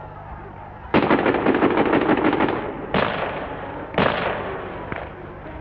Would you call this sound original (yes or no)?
yes